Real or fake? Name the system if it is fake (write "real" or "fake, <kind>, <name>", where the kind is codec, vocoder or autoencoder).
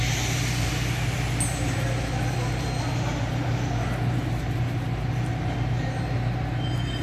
real